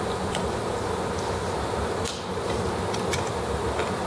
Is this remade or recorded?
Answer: recorded